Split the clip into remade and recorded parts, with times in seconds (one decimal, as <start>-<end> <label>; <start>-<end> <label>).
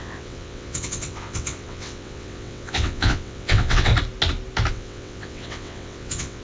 0.0-3.9 remade; 3.9-4.7 recorded; 4.7-6.4 remade